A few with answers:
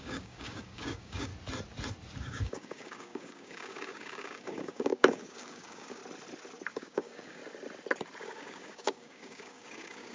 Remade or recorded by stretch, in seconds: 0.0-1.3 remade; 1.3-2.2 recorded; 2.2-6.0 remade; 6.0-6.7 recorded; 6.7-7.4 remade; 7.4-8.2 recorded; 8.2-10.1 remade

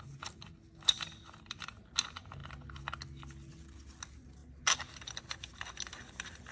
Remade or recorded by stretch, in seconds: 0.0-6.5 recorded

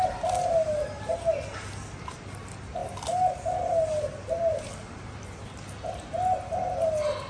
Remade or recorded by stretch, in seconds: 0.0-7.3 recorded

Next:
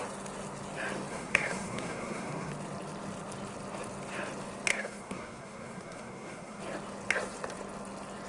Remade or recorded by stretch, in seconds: 0.0-1.1 recorded; 1.1-2.5 remade; 2.5-4.7 recorded; 4.7-6.6 remade; 6.6-8.3 recorded